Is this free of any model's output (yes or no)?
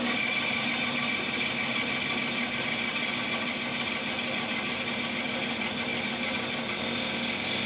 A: yes